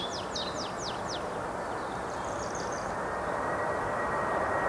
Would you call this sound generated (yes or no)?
no